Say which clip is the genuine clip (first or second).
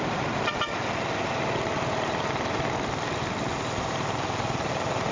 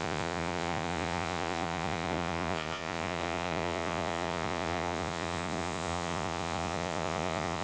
first